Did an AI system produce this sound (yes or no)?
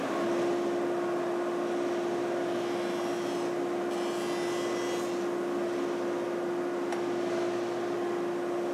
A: no